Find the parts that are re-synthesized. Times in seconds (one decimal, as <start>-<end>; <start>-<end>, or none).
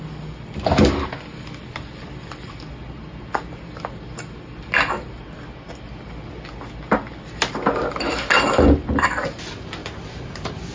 none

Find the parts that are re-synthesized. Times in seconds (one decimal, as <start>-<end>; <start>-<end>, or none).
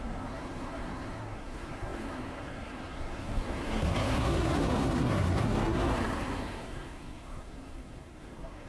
0.0-8.7